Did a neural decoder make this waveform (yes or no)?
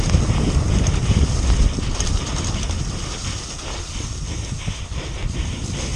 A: no